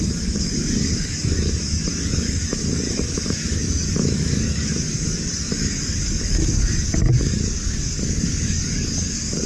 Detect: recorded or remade remade